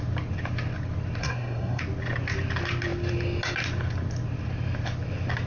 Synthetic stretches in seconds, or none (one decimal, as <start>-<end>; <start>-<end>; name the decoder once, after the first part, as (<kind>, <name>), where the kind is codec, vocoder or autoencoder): 1.2-1.8 (codec, SNAC)